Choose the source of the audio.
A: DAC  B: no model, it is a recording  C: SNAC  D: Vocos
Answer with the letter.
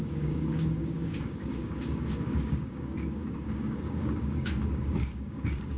A